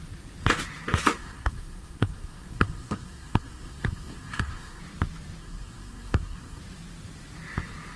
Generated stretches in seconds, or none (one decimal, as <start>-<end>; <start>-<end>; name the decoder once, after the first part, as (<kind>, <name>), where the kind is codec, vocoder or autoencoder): 1.2-4.8 (codec, SNAC); 5.4-6.6